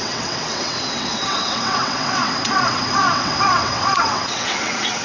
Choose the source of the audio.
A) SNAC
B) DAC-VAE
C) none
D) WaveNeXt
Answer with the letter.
D